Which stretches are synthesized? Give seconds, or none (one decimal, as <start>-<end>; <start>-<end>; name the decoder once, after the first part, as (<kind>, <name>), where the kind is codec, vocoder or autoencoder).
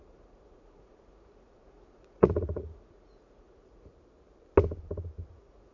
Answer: 0.0-3.9 (vocoder, Vocos); 5.3-5.7